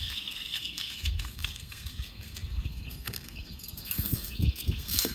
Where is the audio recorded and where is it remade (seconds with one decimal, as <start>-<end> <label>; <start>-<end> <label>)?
0.0-5.1 remade

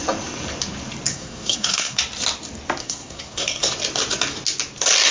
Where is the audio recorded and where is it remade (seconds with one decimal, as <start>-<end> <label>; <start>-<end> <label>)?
0.0-1.1 recorded; 1.1-2.0 remade; 2.0-2.8 recorded; 2.8-3.7 remade; 3.7-5.1 recorded